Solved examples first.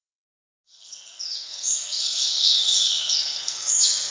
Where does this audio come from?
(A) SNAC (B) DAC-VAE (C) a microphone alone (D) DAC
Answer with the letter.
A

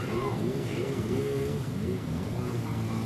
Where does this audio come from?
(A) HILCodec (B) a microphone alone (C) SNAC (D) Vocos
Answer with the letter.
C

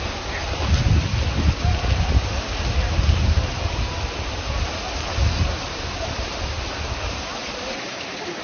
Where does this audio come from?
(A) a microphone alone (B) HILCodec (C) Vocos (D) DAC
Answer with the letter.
A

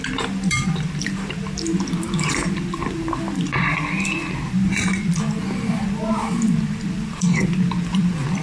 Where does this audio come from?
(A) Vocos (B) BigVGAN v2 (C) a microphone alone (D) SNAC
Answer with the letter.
B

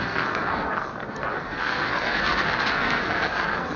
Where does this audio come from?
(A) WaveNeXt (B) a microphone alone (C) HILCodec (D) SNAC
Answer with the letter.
D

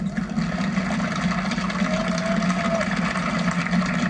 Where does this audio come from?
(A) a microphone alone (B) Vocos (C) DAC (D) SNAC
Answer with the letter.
A